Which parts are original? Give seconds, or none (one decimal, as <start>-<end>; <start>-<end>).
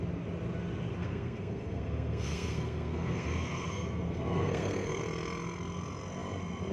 0.0-1.0; 5.0-6.7